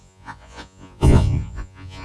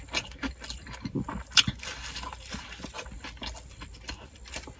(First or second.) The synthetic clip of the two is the first